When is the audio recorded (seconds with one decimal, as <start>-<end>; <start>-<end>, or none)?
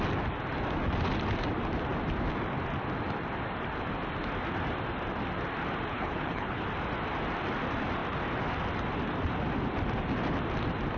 0.0-5.9; 6.6-11.0